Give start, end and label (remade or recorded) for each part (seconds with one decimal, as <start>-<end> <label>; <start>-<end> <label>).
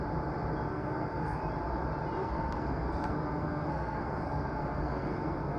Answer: 0.0-0.7 recorded; 0.7-1.4 remade; 1.4-2.2 recorded; 2.2-5.6 remade